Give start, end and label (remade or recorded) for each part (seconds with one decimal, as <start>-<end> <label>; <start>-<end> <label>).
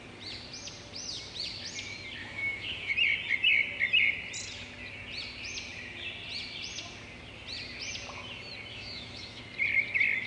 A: 0.0-2.2 recorded; 2.2-2.9 remade; 2.9-8.7 recorded; 8.7-9.4 remade; 9.4-10.3 recorded